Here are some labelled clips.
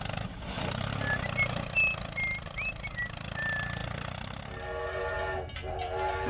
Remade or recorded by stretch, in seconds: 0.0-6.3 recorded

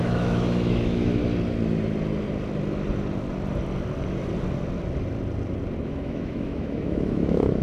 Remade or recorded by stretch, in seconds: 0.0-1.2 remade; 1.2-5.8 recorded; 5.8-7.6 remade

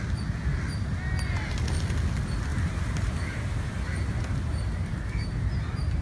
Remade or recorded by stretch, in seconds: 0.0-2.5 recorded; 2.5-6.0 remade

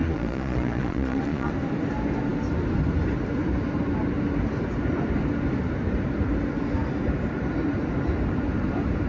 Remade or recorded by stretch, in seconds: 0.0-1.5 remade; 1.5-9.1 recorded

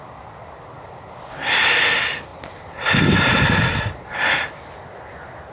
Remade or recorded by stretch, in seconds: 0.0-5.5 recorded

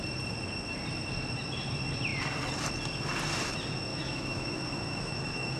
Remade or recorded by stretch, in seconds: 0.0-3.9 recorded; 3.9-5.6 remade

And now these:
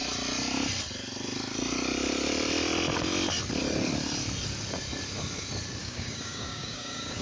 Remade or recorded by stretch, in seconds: 0.0-5.8 recorded; 5.8-7.2 remade